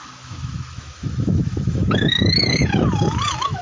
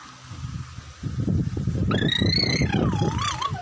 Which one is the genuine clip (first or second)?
second